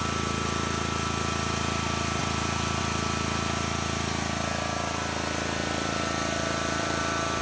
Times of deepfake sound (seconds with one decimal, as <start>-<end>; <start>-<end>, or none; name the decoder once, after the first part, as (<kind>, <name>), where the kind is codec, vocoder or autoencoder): 2.2-2.8 (vocoder, BigVGAN v2); 5.6-7.0